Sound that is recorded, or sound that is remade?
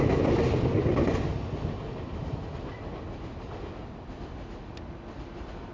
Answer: recorded